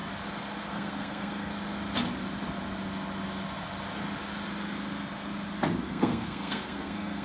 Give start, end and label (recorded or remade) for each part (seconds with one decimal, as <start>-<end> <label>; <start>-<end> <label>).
0.0-0.7 recorded; 0.7-1.5 remade; 1.5-5.8 recorded; 5.8-7.2 remade